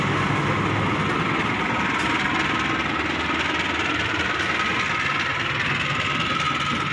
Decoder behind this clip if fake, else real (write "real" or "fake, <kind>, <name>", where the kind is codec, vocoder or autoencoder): real